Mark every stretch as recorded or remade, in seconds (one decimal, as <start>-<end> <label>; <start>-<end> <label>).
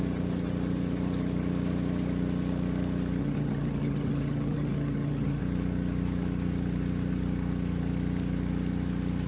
0.0-3.2 recorded; 3.2-5.4 remade; 5.4-9.3 recorded